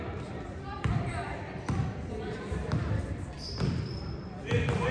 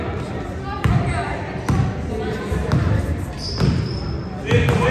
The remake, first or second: first